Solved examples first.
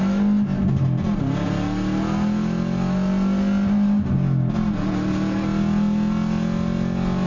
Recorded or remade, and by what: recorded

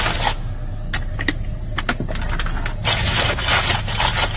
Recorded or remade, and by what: recorded